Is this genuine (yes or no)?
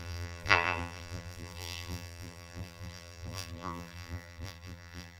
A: no